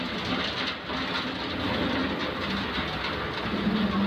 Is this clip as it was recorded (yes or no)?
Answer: yes